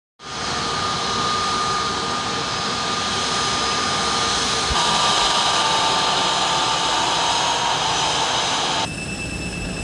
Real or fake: real